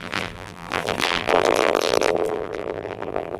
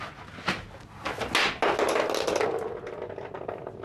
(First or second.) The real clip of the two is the second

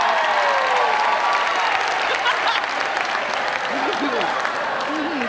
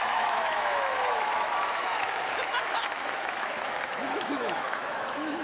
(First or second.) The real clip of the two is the first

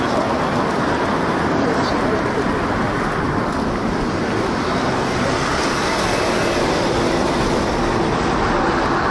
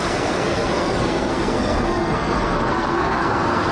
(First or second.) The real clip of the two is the first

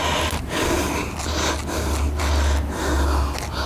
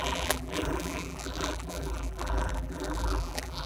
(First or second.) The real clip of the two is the first